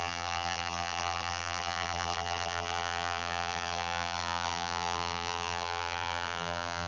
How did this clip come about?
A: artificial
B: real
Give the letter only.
A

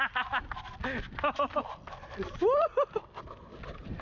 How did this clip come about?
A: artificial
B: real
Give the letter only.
B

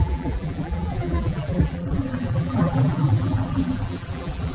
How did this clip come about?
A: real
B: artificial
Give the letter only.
B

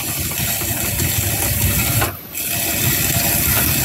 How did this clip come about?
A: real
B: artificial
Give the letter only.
A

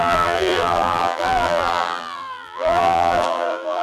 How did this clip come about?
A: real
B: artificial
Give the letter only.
B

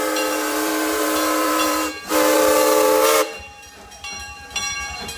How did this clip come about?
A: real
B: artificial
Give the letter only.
B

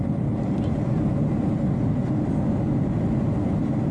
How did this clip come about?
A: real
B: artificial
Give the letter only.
A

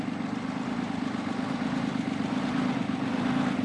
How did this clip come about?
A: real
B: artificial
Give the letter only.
A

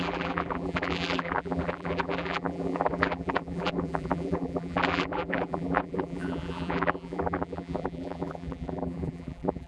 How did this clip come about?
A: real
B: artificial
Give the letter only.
B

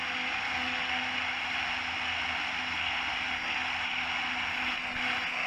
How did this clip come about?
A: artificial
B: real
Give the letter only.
B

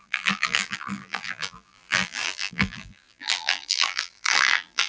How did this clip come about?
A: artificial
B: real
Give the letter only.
A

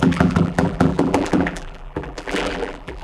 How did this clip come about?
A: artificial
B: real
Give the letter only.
A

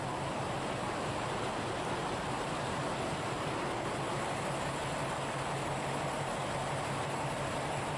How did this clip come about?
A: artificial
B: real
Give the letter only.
B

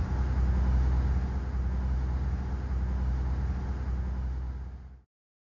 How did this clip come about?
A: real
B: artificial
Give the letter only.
A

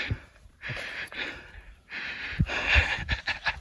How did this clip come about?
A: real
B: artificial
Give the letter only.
B